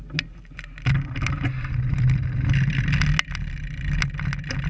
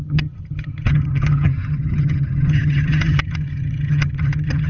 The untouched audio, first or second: first